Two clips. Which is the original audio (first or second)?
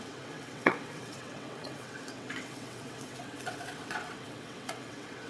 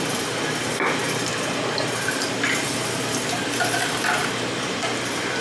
second